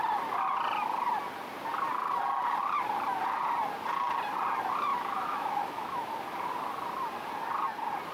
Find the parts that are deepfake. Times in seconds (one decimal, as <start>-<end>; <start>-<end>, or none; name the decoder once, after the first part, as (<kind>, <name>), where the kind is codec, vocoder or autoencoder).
4.9-6.1 (autoencoder, DAC-VAE)